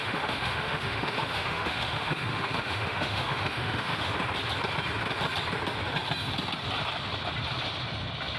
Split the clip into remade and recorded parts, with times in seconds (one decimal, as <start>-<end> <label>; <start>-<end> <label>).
0.0-4.1 remade; 4.1-8.4 recorded